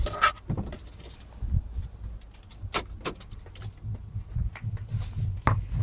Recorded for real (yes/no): yes